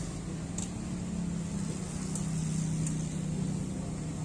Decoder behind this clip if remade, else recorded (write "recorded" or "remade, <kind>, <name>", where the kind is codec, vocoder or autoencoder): recorded